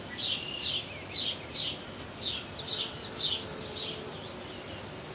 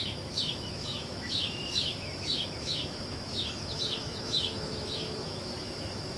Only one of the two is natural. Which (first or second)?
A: first